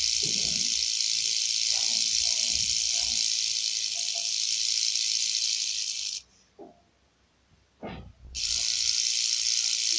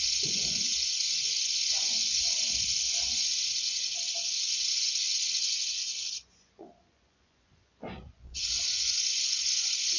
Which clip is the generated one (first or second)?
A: second